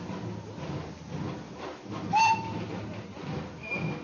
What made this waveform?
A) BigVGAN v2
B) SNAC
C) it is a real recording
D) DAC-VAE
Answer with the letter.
C